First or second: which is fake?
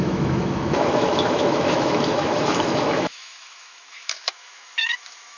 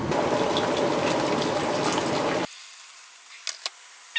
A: first